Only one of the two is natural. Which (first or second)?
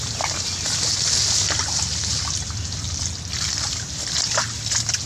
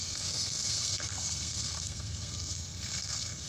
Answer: first